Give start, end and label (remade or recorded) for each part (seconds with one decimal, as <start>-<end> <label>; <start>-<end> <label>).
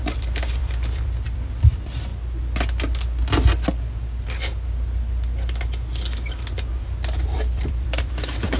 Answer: 0.0-2.1 remade; 2.1-7.2 recorded; 7.2-8.6 remade